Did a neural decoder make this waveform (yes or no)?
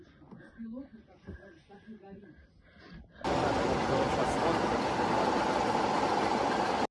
no